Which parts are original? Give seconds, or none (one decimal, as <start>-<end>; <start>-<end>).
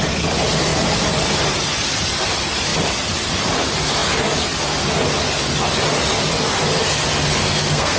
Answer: 0.0-7.4